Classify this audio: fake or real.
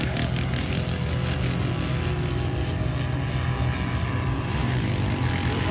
real